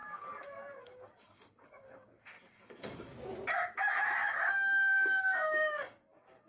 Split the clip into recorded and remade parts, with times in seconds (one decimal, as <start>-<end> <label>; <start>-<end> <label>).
0.0-3.1 remade; 3.1-4.9 recorded; 4.9-6.5 remade